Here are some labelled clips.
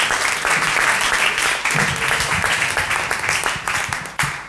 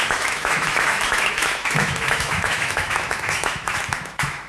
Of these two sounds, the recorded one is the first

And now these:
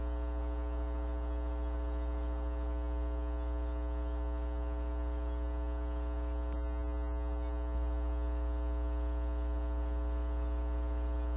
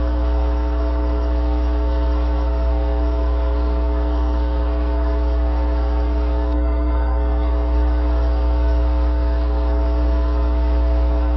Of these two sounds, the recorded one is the first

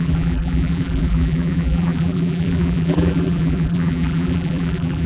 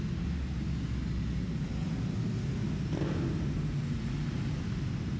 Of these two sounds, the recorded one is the second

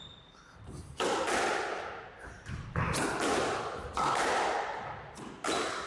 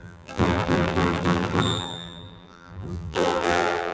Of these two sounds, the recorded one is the first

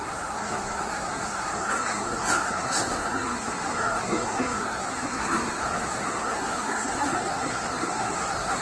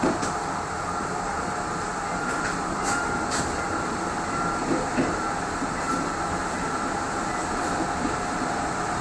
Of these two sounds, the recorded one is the second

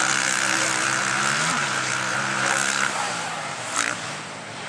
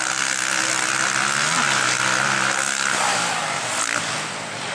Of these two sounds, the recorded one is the second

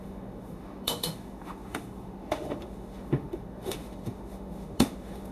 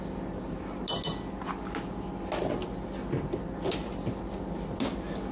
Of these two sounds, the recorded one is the second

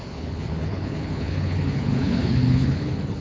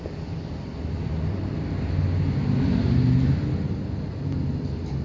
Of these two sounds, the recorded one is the second